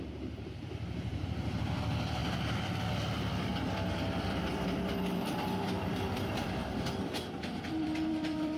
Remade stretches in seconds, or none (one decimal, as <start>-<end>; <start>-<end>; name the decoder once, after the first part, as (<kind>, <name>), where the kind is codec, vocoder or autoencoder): 0.0-3.5 (vocoder, BigVGAN v2); 4.2-8.6